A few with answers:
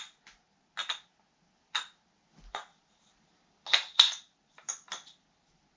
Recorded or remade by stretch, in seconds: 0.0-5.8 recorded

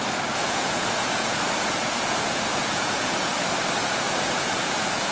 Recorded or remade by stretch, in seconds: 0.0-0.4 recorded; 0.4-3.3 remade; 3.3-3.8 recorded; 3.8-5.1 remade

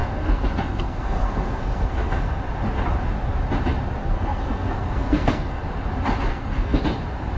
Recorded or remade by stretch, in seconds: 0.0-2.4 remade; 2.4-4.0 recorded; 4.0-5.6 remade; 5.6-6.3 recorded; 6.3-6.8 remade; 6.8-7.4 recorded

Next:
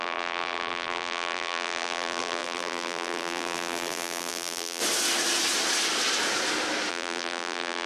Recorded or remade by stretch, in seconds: 0.0-4.8 remade; 4.8-6.9 recorded; 6.9-7.9 remade

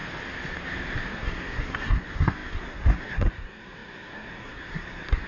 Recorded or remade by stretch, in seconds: 0.0-1.1 recorded; 1.1-5.3 remade

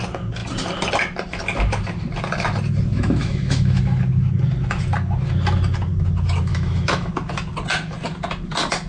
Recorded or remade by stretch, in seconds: 0.0-2.9 recorded; 2.9-3.8 remade; 3.8-6.5 recorded; 6.5-7.1 remade; 7.1-8.9 recorded

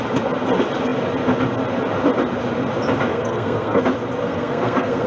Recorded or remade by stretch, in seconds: 0.0-3.1 recorded; 3.1-3.8 remade; 3.8-4.2 recorded; 4.2-5.1 remade